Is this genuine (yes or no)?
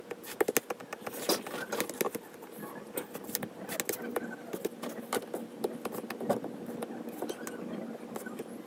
yes